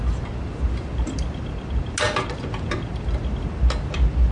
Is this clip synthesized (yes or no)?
no